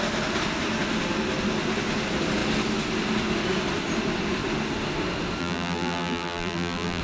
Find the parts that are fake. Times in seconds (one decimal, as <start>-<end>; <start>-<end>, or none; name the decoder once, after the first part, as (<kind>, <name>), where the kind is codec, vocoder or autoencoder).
5.4-7.0 (vocoder, BigVGAN v2)